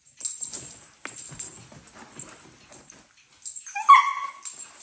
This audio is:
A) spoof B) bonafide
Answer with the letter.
B